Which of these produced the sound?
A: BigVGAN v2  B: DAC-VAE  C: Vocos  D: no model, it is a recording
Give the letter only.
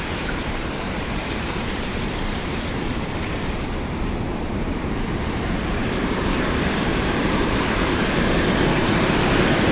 A